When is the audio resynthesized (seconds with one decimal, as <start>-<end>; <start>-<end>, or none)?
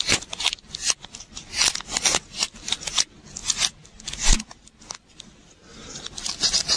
none